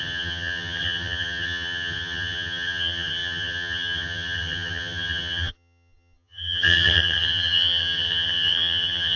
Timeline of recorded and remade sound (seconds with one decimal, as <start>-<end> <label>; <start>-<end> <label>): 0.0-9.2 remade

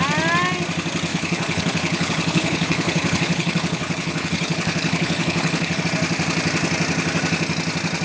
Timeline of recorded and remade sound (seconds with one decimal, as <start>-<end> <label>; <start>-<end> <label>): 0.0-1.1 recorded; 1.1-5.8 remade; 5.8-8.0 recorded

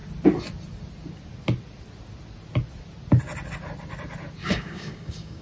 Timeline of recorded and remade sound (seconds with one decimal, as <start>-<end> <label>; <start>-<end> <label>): 0.0-4.4 recorded; 4.4-5.4 remade

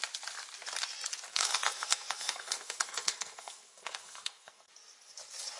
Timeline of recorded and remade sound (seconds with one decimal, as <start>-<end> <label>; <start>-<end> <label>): 0.0-1.3 recorded; 1.3-4.7 remade; 4.7-5.6 recorded

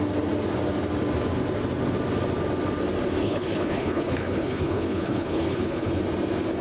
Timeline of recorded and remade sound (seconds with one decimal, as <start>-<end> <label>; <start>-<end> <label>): 0.0-3.2 recorded; 3.2-6.0 remade; 6.0-6.6 recorded

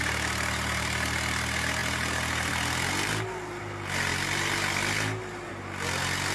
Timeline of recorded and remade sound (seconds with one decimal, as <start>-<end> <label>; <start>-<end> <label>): 0.0-6.3 recorded

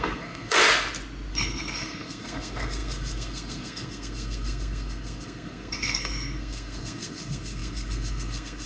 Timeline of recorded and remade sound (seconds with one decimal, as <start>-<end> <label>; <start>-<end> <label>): 0.0-0.6 remade; 0.6-1.3 recorded; 1.3-8.7 remade